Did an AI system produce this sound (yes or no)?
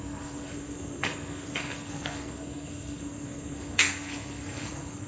yes